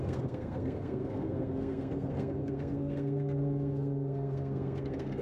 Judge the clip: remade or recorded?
remade